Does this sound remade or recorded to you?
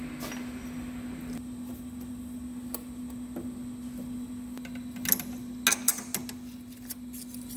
recorded